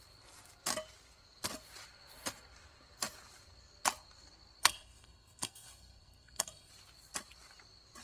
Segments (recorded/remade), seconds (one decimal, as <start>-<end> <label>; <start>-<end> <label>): 0.0-4.6 recorded; 4.6-6.7 remade; 6.7-8.0 recorded